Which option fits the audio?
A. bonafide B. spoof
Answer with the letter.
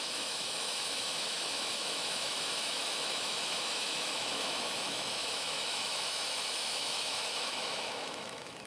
B